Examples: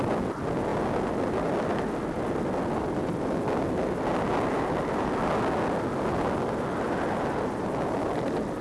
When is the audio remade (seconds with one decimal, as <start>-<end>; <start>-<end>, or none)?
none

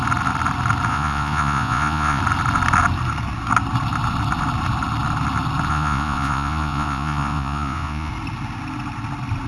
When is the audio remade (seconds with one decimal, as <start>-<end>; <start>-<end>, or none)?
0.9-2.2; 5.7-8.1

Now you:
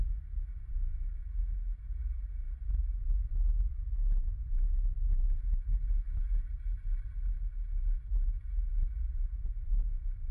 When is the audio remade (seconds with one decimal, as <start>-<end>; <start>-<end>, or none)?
0.0-10.3

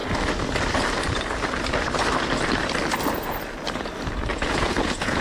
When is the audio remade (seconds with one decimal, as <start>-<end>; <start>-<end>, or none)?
4.3-5.2

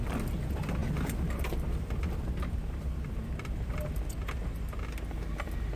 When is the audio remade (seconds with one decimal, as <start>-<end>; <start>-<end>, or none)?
none

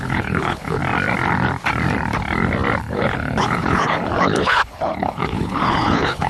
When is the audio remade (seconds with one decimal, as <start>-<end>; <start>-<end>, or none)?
0.0-0.8; 2.8-6.3

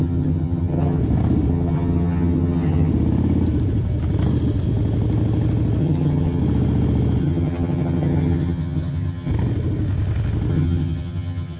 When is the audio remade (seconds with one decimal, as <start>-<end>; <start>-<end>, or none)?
0.0-1.0; 1.5-2.9; 5.8-6.4; 7.2-9.3; 10.5-11.6

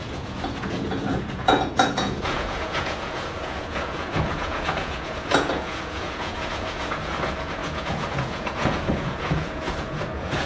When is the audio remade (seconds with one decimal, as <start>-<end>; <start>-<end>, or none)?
0.0-10.5